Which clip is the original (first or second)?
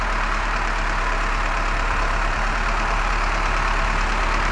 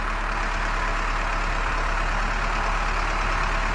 second